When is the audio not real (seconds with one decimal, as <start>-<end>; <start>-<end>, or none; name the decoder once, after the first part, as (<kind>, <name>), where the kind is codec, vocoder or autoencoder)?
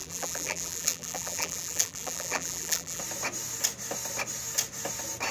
0.0-3.0 (vocoder, BigVGAN v2)